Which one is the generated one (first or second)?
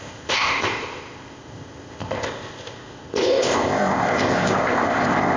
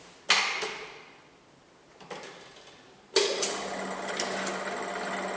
first